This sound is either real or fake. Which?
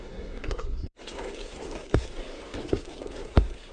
fake